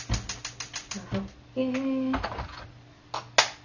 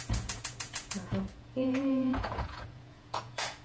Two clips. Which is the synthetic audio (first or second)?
second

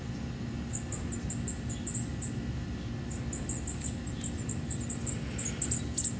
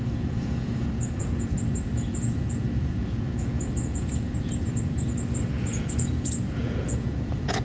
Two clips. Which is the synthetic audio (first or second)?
second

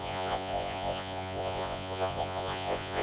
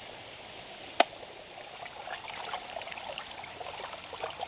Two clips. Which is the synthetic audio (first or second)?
first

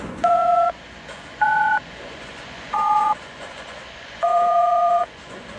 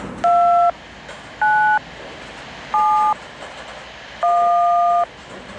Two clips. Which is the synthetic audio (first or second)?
first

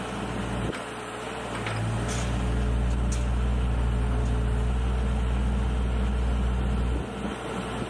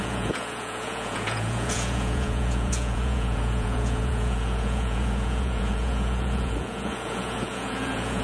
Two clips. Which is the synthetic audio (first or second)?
second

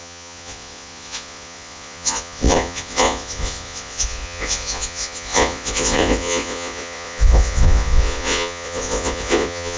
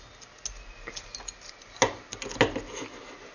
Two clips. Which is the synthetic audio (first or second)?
first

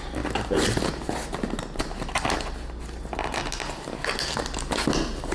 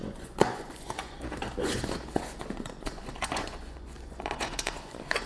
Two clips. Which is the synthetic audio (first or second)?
second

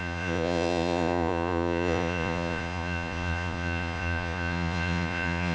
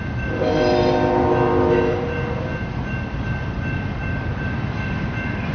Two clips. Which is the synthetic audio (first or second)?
first